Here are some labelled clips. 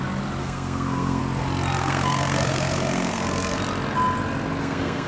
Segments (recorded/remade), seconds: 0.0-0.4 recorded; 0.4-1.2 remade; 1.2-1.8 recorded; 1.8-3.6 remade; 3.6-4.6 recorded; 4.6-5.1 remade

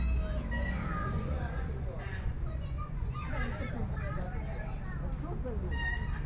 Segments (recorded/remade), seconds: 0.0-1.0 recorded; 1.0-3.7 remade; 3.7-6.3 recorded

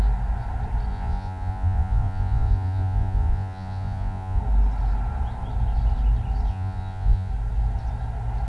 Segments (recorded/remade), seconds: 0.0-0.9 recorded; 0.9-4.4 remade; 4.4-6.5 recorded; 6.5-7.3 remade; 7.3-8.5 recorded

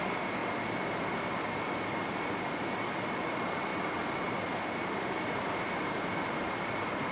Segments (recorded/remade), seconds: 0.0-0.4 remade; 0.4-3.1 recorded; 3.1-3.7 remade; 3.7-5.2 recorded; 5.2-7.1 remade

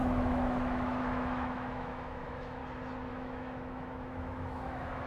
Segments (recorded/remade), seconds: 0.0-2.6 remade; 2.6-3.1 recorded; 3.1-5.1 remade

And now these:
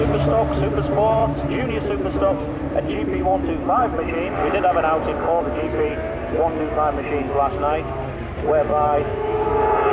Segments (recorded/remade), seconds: 0.0-8.7 recorded; 8.7-9.4 remade; 9.4-9.9 recorded

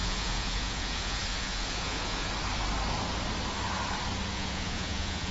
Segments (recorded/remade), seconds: 0.0-2.3 remade; 2.3-4.3 recorded; 4.3-5.3 remade

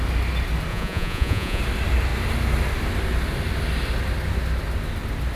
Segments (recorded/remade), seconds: 0.0-0.7 recorded; 0.7-1.6 remade; 1.6-5.4 recorded